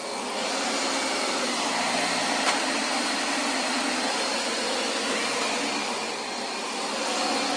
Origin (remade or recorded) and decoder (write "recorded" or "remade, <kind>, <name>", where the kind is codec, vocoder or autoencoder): recorded